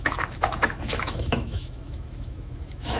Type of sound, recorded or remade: remade